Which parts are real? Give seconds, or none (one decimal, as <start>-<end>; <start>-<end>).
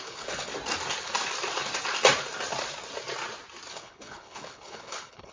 0.5-3.7